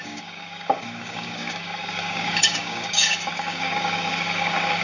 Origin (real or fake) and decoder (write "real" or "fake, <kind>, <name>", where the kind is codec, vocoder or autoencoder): fake, codec, DAC